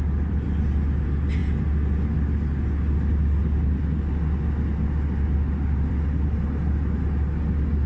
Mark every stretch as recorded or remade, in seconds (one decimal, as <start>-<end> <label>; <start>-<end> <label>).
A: 0.0-7.9 recorded